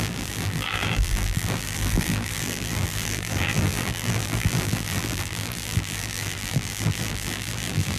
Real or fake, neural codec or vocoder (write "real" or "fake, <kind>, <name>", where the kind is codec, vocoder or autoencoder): fake, vocoder, BigVGAN v2